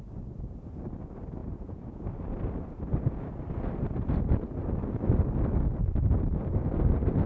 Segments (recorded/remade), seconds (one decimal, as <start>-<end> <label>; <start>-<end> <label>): 0.0-1.4 recorded; 1.4-2.0 remade; 2.0-7.3 recorded